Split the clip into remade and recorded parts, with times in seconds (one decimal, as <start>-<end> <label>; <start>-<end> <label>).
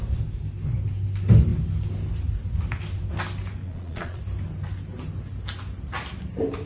0.0-3.6 recorded; 3.6-4.2 remade; 4.2-6.7 recorded